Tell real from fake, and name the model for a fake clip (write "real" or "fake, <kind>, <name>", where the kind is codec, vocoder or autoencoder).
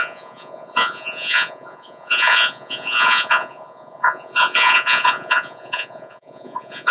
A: fake, vocoder, Vocos